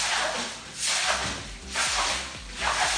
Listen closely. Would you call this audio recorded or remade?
recorded